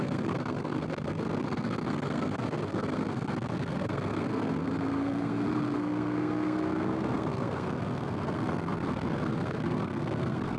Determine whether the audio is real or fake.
fake